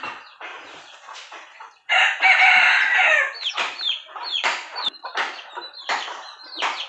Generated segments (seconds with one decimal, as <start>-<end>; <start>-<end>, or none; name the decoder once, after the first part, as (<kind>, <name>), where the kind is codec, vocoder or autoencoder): 0.0-0.5 (vocoder, BigVGAN v2); 3.5-6.9

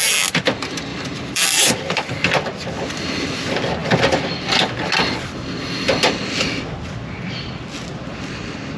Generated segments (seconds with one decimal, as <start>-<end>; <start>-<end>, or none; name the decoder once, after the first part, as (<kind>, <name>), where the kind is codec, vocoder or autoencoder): 0.9-2.1 (vocoder, BigVGAN v2)

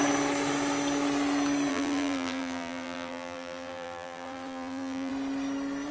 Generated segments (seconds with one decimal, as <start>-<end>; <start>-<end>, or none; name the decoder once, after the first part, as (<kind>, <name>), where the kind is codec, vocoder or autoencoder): 1.7-5.1 (vocoder, BigVGAN v2)

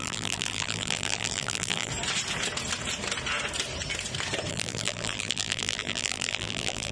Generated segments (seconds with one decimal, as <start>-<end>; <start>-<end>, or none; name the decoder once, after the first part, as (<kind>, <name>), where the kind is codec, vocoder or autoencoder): 0.0-1.9 (vocoder, BigVGAN v2); 4.5-6.9

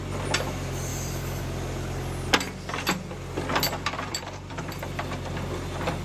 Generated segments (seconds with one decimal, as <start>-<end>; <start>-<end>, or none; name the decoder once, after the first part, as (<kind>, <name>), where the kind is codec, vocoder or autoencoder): 0.9-1.4 (vocoder, BigVGAN v2); 4.1-4.6

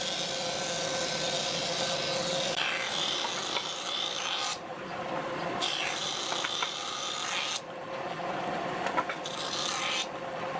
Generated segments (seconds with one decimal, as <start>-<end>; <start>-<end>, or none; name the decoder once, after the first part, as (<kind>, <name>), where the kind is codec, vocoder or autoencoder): 4.5-5.5 (vocoder, BigVGAN v2)